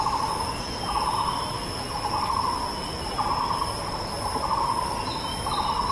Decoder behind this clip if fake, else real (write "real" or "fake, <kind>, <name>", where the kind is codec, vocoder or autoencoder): real